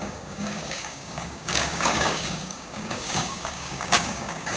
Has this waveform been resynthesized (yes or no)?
yes